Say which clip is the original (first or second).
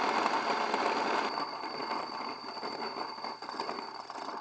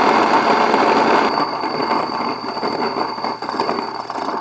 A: second